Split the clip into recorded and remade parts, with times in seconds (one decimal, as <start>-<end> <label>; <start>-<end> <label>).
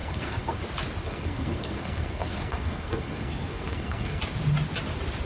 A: 0.0-0.6 remade; 0.6-1.0 recorded; 1.0-4.2 remade; 4.2-5.3 recorded